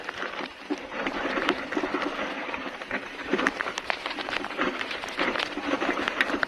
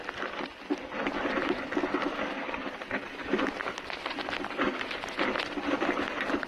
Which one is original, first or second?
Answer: second